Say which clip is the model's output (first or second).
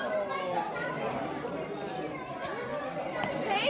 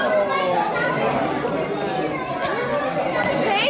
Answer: first